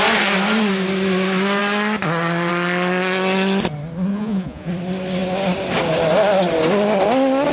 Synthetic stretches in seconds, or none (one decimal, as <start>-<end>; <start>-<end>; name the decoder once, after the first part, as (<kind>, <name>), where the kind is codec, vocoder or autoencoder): 4.1-4.7 (vocoder, Vocos)